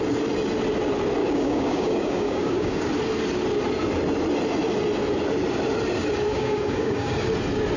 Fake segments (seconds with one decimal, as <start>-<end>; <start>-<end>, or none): 1.2-2.9; 6.3-7.3